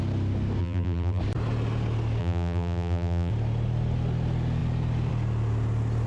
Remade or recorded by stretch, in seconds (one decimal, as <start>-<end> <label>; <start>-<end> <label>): 0.0-0.6 recorded; 0.6-1.2 remade; 1.2-2.2 recorded; 2.2-3.3 remade; 3.3-6.1 recorded